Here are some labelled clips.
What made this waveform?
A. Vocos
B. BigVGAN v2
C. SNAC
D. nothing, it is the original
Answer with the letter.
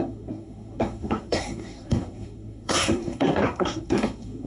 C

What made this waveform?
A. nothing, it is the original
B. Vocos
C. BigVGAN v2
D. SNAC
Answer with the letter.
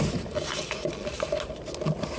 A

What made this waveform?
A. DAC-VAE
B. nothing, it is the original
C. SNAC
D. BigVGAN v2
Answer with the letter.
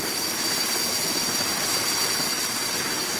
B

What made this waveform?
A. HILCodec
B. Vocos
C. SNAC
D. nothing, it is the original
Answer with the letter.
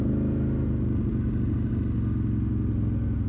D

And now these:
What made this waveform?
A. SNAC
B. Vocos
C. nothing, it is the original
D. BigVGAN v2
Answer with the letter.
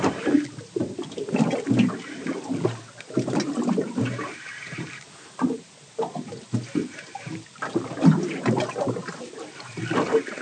C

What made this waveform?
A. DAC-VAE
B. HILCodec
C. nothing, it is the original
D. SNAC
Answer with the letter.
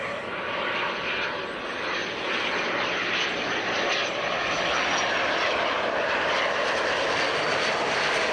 C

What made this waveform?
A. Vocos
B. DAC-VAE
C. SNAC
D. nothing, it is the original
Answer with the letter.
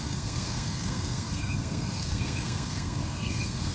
C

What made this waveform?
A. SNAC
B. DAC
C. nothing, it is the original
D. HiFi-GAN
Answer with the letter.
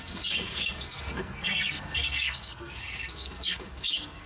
A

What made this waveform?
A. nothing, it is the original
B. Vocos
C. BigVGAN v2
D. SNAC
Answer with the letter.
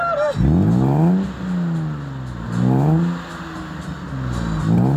A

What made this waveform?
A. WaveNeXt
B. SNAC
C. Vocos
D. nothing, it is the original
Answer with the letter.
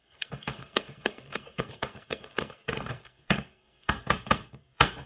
B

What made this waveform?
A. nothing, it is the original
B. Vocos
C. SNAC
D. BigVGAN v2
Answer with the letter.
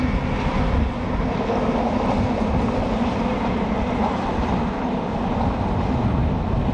A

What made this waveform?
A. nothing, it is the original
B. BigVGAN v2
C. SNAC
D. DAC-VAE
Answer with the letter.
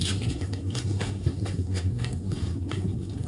C